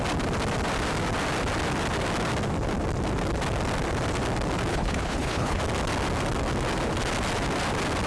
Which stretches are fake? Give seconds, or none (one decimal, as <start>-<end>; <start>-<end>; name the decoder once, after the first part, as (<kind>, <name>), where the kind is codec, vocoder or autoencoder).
4.7-5.6 (codec, HILCodec)

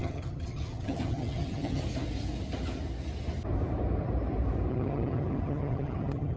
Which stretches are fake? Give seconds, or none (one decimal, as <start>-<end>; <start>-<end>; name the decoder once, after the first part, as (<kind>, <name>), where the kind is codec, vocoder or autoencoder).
0.0-1.8 (vocoder, HiFi-GAN); 4.7-6.4

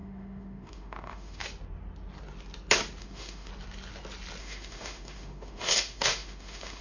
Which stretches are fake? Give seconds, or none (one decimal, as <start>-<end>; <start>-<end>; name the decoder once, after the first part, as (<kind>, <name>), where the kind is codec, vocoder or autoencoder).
0.0-1.4 (autoencoder, DAC-VAE); 3.0-3.5; 4.4-6.8

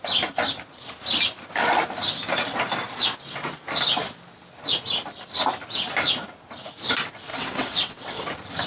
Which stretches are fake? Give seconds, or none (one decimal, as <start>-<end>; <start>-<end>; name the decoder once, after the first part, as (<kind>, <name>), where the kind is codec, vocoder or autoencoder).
7.3-8.2 (vocoder, WaveNeXt)

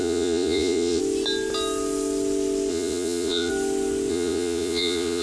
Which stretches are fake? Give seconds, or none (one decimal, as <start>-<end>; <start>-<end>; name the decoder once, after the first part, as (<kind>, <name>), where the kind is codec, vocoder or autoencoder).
0.0-1.0 (vocoder, Vocos); 2.7-3.5; 4.1-5.2

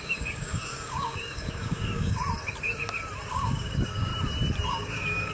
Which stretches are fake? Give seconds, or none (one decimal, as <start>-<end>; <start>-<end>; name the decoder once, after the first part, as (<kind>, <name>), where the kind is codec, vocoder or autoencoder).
0.0-2.2 (codec, DAC); 3.3-4.1; 4.7-5.3

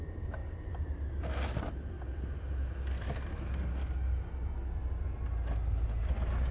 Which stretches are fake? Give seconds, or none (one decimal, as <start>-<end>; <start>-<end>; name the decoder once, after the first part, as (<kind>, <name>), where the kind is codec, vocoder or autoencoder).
0.4-3.4 (vocoder, BigVGAN v2)